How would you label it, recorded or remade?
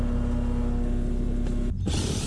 recorded